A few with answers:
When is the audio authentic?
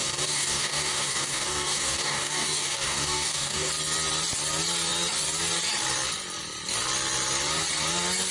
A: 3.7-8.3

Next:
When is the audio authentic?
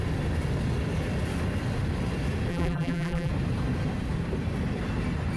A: 0.0-2.5; 3.3-5.4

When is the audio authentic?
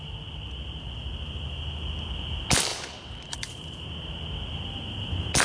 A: 0.0-2.7; 3.8-5.4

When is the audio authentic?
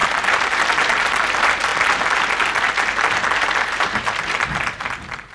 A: 0.0-0.9; 1.7-5.3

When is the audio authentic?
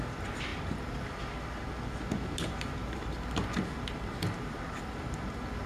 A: 0.0-0.5; 1.3-2.8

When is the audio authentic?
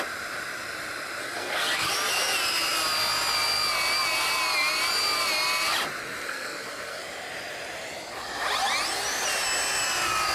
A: 0.0-1.2; 1.9-6.0; 7.0-10.3